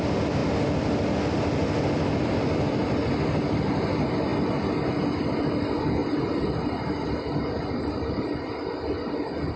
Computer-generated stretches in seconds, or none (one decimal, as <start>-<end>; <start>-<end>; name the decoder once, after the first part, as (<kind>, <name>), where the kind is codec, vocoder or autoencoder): none